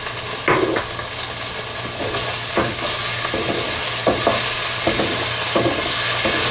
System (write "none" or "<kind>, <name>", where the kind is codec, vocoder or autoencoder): none